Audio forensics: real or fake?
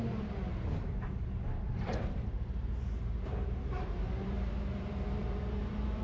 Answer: fake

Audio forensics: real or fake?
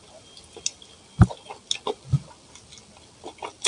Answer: real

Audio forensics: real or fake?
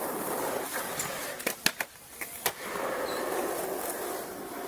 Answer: real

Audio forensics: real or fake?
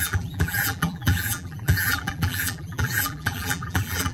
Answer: fake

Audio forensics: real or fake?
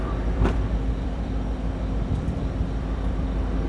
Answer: fake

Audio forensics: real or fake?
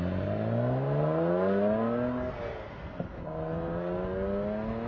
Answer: real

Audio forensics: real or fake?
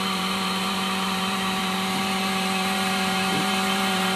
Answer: fake